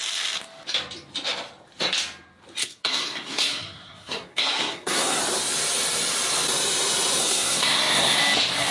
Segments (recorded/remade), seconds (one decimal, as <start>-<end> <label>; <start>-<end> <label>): 0.0-2.6 recorded; 2.6-5.2 remade; 5.2-7.2 recorded; 7.2-8.2 remade; 8.2-8.7 recorded

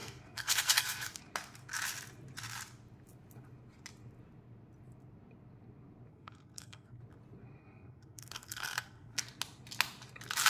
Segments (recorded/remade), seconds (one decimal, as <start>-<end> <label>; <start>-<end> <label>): 0.0-1.2 remade; 1.2-6.1 recorded; 6.1-7.0 remade; 7.0-7.6 recorded; 7.6-9.2 remade; 9.2-10.5 recorded

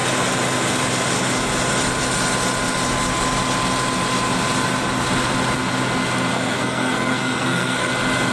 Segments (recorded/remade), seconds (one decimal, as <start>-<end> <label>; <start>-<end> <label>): 0.0-6.3 recorded; 6.3-7.9 remade; 7.9-8.3 recorded

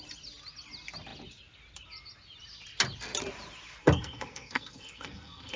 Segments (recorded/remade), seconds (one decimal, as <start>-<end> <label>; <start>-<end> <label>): 0.0-3.8 recorded; 3.8-5.6 remade

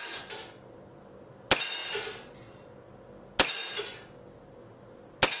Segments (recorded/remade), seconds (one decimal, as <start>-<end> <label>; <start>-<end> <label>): 0.0-5.4 recorded

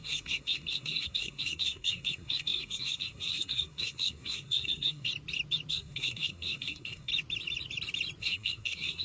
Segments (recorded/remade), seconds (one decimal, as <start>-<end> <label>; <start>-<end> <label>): 0.0-5.1 remade; 5.1-5.7 recorded; 5.7-7.1 remade; 7.1-8.2 recorded; 8.2-9.0 remade

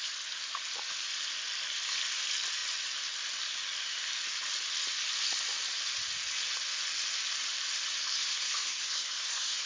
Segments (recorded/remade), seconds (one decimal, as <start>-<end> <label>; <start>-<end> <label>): 0.0-8.2 recorded; 8.2-9.7 remade

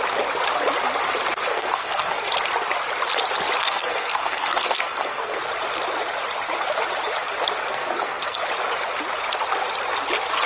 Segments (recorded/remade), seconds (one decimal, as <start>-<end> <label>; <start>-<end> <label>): 0.0-1.5 recorded; 1.5-2.2 remade; 2.2-3.6 recorded; 3.6-5.4 remade; 5.4-7.7 recorded; 7.7-8.4 remade; 8.4-10.5 recorded